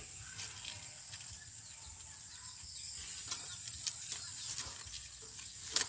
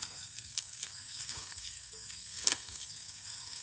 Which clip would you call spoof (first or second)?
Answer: second